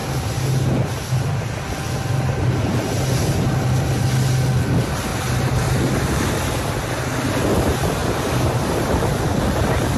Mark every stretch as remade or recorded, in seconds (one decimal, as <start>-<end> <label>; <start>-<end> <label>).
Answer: 0.0-5.1 recorded; 5.1-6.6 remade; 6.6-8.0 recorded; 8.0-9.0 remade; 9.0-10.0 recorded